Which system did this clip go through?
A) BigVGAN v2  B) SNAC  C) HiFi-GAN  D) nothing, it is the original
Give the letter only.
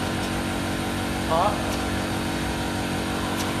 D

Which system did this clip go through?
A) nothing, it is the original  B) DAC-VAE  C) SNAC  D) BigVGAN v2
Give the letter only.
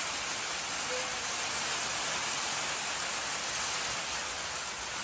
A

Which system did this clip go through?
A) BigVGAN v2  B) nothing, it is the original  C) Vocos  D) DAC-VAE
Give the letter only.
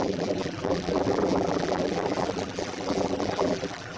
A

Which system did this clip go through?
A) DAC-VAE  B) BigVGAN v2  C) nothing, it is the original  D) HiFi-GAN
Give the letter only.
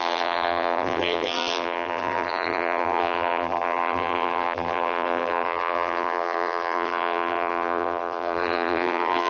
B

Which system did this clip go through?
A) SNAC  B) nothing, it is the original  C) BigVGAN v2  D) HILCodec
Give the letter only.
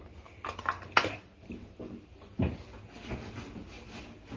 B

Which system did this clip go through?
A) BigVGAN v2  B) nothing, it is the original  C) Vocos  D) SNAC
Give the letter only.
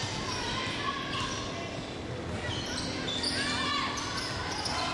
B